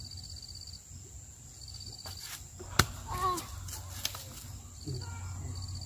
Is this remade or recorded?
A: recorded